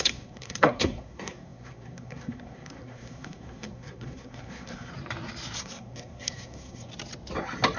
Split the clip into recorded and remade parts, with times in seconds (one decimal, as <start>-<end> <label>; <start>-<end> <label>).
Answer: 0.0-4.9 remade; 4.9-5.6 recorded; 5.6-6.9 remade; 6.9-7.8 recorded